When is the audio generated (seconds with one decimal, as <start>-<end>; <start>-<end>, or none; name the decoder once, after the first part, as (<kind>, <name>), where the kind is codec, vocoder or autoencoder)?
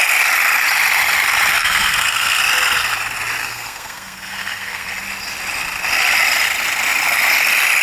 1.5-2.4 (codec, SNAC); 3.4-4.9